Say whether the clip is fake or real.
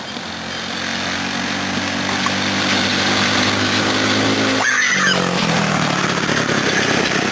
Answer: real